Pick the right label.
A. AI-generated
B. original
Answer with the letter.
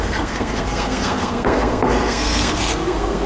A